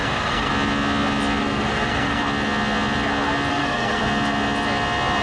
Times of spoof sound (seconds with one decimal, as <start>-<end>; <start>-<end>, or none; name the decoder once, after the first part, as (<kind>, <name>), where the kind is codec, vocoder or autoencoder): 0.0-0.5 (codec, SNAC); 1.4-2.2; 3.5-4.0